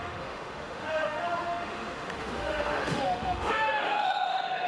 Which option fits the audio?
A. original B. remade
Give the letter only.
B